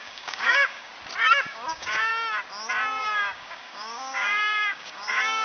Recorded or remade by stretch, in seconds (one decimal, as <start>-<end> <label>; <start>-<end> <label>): 0.0-0.9 remade; 0.9-1.5 recorded; 1.5-2.1 remade; 2.1-3.0 recorded; 3.0-5.4 remade